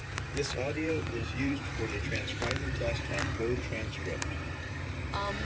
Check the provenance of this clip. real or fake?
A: fake